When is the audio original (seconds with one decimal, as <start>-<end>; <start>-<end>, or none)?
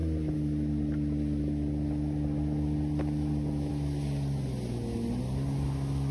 0.0-6.1